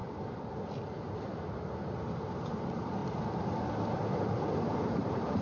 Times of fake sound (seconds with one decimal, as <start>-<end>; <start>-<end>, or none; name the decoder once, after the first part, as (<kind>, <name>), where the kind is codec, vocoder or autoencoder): 0.9-3.0 (vocoder, BigVGAN v2); 4.2-5.4